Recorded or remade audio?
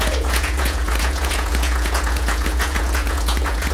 remade